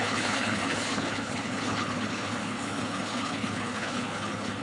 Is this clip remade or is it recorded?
remade